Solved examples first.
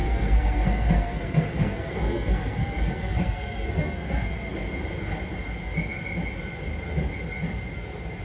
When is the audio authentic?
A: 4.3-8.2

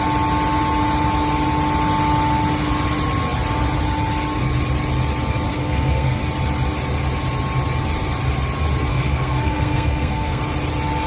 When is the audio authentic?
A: 0.0-5.5; 6.2-8.9; 10.4-11.1

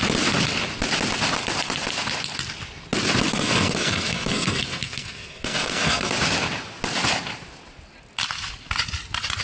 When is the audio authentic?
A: 0.0-3.3; 6.1-9.4

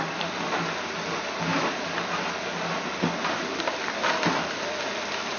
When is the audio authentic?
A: 0.0-5.4

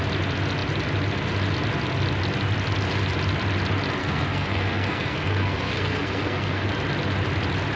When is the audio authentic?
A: 0.0-4.0; 6.7-7.8